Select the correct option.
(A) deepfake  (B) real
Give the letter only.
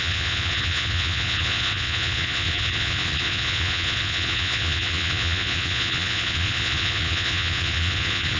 A